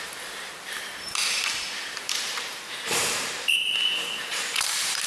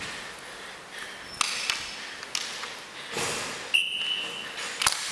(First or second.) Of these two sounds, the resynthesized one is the first